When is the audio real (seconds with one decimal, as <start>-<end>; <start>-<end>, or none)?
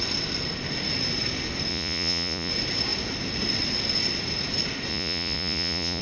0.0-1.7; 2.5-4.9